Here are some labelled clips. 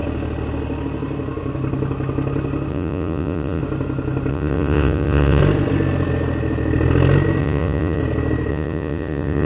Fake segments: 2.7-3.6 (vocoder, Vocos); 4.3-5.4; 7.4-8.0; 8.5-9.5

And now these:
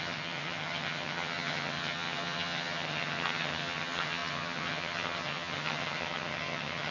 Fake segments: 0.0-6.9 (vocoder, HiFi-GAN)

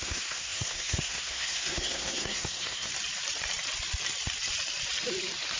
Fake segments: 0.0-2.9 (codec, SNAC)

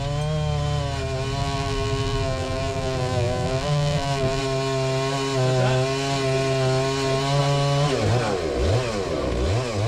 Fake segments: 1.4-4.4 (vocoder, BigVGAN v2)

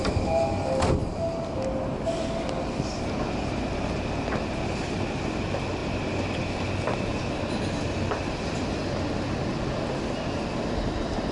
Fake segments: none

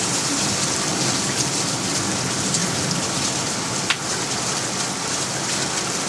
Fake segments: none

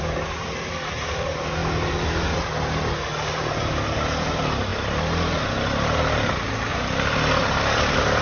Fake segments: none

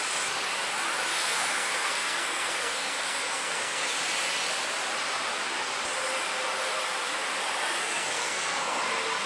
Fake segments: 1.1-3.9 (codec, SNAC); 7.8-8.8